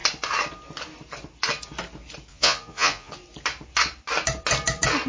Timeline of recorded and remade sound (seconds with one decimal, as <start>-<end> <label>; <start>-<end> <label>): 0.0-2.3 recorded; 2.3-3.1 remade; 3.1-5.1 recorded

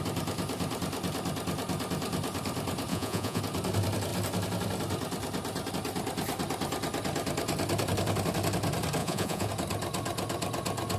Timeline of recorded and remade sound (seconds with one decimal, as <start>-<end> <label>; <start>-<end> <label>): 0.0-2.9 recorded; 2.9-3.4 remade; 3.4-9.0 recorded; 9.0-9.5 remade; 9.5-11.0 recorded

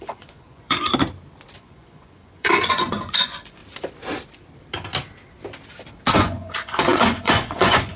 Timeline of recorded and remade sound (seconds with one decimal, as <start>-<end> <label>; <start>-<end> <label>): 0.0-0.9 remade; 0.9-1.6 recorded; 1.6-3.6 remade; 3.6-6.1 recorded; 6.1-8.0 remade

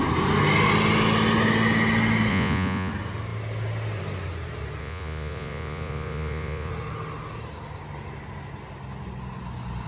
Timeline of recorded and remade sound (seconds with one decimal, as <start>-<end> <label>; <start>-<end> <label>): 0.0-2.3 recorded; 2.3-2.9 remade; 2.9-4.8 recorded; 4.8-6.7 remade; 6.7-9.9 recorded